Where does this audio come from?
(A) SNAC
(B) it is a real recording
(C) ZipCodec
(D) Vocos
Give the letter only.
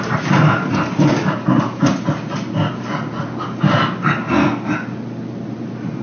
B